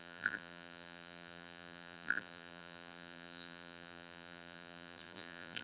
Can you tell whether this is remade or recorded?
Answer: remade